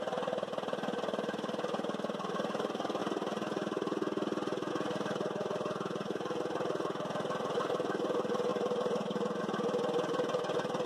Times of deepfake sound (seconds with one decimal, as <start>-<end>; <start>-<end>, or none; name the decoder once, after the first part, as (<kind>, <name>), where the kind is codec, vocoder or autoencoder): none